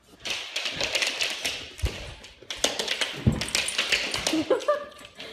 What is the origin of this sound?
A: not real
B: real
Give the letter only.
B